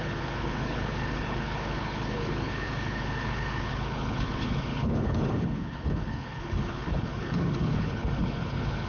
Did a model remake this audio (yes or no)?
yes